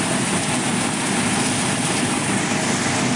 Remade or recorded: recorded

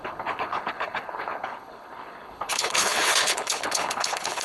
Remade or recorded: remade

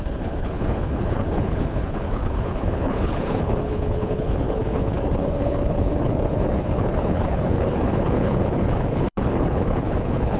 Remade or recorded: remade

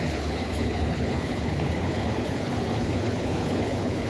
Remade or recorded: remade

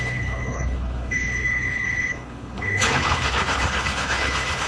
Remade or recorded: remade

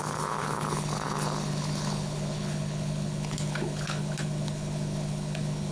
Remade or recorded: remade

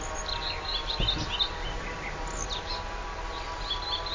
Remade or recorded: recorded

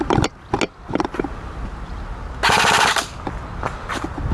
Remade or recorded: recorded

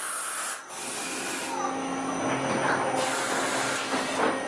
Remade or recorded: recorded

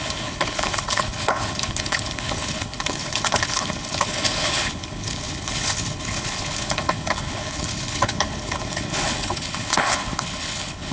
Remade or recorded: remade